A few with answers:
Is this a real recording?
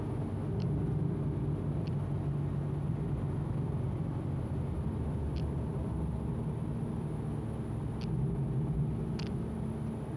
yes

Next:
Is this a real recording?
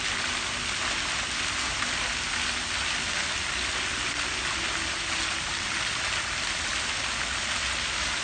yes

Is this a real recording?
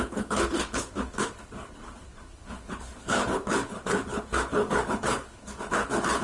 no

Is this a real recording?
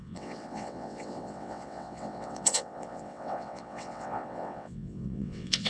no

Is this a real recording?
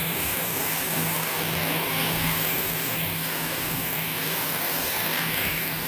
no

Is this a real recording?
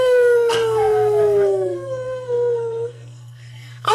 no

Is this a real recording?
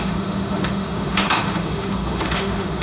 no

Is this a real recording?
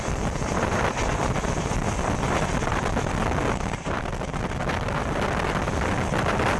yes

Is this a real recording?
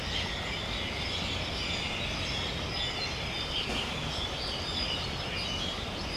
yes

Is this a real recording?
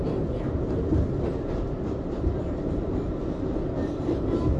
yes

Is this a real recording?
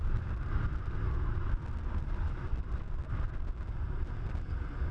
no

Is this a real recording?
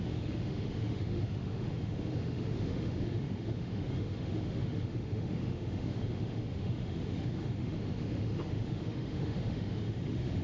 no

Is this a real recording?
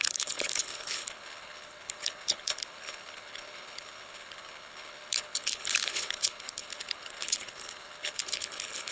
no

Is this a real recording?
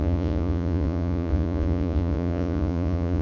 no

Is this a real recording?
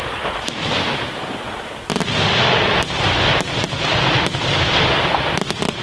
yes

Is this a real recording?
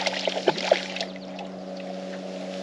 yes